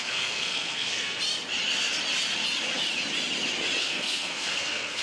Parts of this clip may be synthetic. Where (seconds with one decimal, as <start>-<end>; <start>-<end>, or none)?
0.0-1.2; 3.8-5.0